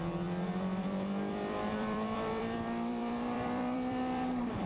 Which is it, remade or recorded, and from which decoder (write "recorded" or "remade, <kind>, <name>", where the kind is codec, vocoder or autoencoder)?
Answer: remade, vocoder, BigVGAN v2